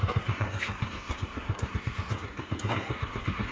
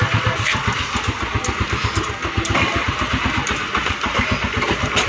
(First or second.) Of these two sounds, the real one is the second